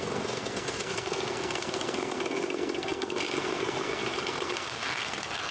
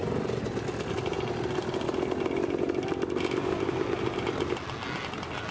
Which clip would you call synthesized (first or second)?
first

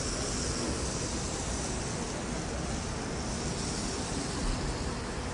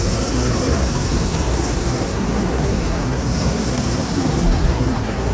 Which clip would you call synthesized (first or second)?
second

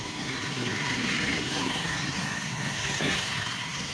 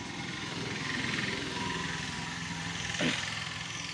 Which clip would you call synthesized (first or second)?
first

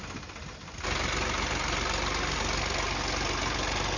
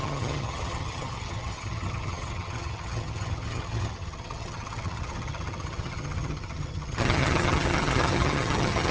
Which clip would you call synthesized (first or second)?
second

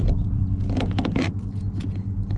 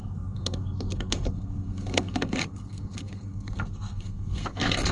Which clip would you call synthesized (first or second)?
second